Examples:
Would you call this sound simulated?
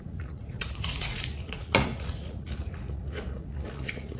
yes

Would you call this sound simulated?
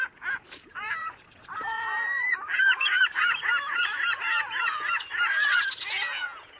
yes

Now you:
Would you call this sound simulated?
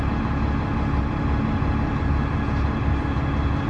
no